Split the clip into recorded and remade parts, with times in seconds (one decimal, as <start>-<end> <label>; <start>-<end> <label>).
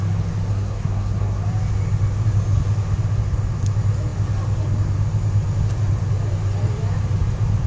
0.0-0.5 recorded; 0.5-1.4 remade; 1.4-7.7 recorded